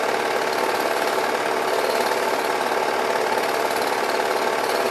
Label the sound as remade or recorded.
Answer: recorded